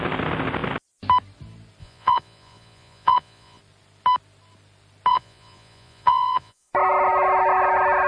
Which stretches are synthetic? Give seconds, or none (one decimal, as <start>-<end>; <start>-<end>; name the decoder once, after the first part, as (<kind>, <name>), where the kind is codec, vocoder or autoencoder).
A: 1.8-3.6 (vocoder, Vocos); 5.1-6.7